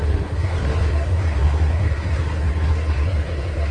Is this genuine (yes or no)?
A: no